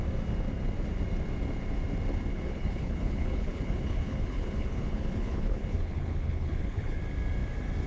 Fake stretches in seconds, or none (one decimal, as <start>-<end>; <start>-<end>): 2.3-7.0